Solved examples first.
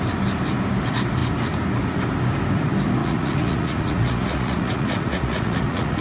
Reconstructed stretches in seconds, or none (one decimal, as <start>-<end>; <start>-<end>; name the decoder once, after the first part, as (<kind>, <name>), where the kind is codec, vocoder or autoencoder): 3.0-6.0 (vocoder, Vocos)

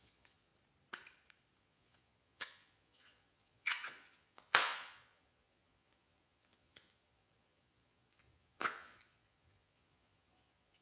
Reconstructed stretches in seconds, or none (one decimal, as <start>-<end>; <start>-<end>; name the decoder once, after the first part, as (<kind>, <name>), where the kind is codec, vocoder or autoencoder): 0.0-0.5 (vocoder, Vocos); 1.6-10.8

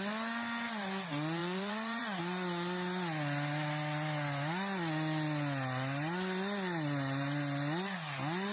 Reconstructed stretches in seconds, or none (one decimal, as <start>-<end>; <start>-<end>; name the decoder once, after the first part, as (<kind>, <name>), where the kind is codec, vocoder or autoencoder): 1.4-2.2 (vocoder, Vocos)